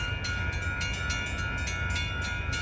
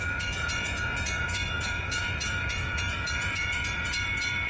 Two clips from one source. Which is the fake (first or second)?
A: second